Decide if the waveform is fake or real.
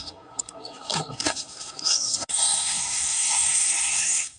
fake